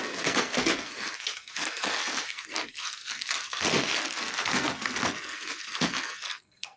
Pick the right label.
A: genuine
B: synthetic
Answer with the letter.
B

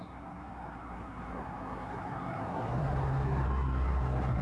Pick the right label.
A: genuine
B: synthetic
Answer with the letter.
B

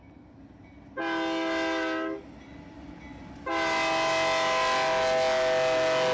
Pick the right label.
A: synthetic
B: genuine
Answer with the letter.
B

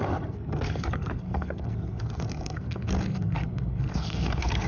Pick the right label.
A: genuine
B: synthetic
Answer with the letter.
B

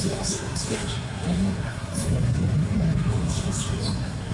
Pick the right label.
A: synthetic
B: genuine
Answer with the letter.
A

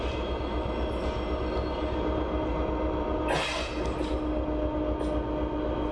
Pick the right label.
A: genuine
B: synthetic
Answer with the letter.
A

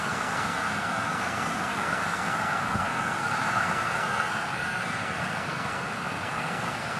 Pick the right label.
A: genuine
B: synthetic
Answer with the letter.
B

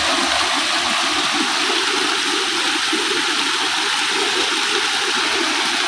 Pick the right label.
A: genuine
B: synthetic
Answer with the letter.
A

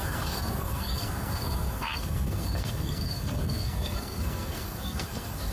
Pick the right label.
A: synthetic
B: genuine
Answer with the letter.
A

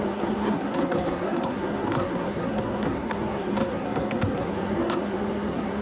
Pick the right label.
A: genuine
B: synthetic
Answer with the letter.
B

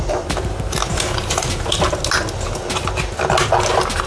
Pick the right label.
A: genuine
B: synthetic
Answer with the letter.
A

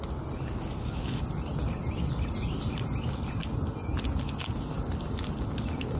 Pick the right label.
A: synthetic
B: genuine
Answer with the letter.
B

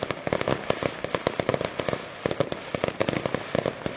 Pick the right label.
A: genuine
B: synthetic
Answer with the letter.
A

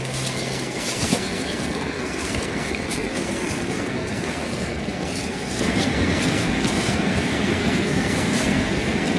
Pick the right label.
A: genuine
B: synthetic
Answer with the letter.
B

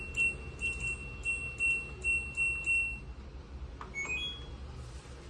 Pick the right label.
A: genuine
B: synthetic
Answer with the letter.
A